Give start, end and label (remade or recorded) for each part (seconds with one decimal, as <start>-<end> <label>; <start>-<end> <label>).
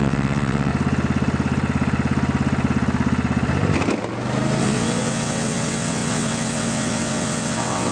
0.0-0.7 remade; 0.7-4.6 recorded; 4.6-7.9 remade